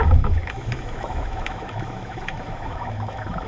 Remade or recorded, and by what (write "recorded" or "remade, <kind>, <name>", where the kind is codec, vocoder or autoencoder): remade, autoencoder, DAC-VAE